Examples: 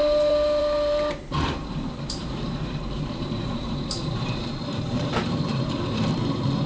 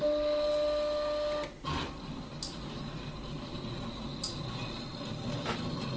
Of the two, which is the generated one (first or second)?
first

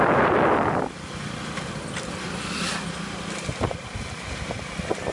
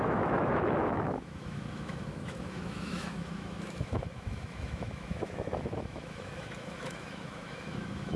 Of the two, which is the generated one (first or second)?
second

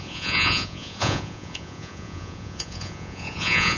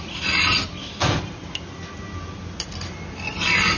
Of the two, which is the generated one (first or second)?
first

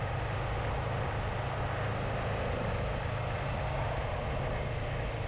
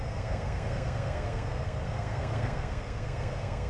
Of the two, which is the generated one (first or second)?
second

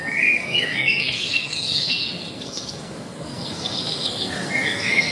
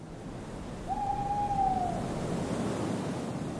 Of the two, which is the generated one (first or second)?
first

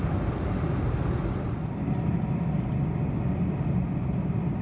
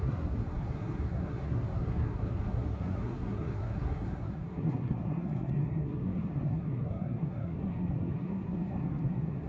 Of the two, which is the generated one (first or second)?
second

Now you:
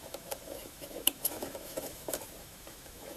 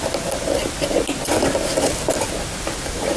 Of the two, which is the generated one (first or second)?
first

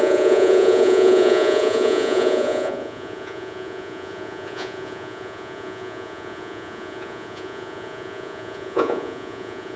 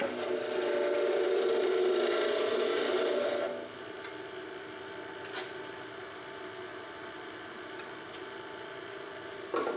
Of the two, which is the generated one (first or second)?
first